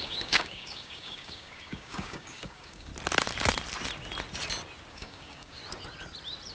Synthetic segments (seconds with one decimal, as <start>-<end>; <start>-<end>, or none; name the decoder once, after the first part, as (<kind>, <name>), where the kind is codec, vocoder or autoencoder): 0.0-2.9 (codec, DAC); 4.9-5.6